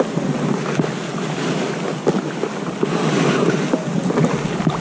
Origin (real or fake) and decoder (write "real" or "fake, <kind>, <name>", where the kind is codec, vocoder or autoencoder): real